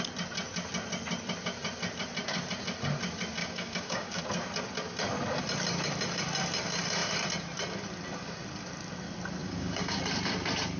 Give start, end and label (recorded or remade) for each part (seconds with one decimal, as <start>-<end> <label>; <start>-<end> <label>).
0.0-3.4 recorded; 3.4-4.2 remade; 4.2-9.4 recorded; 9.4-10.0 remade; 10.0-10.8 recorded